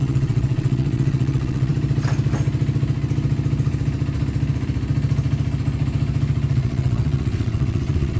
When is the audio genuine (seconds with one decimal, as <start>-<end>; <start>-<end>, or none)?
1.7-6.5